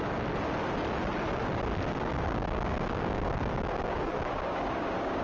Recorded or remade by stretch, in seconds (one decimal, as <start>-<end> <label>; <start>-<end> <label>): 0.0-1.9 recorded; 1.9-5.2 remade